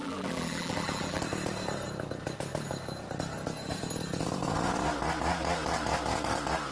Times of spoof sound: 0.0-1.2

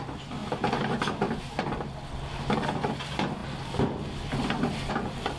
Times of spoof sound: none

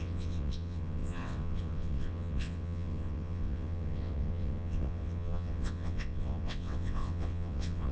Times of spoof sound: 0.0-7.9

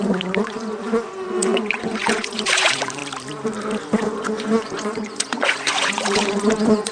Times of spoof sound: 0.0-3.0; 3.8-6.9

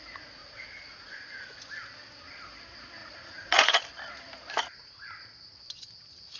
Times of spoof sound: 0.4-1.6; 3.0-3.8

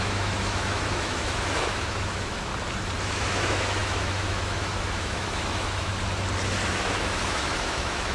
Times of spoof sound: 0.0-2.5; 3.0-5.9; 6.7-8.1